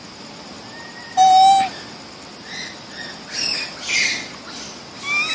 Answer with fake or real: real